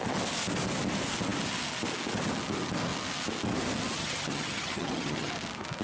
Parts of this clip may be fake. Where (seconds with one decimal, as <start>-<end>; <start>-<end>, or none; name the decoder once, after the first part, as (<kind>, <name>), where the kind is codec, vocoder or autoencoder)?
4.0-5.3 (vocoder, HiFi-GAN)